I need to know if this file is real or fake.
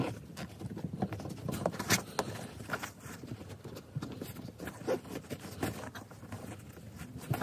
real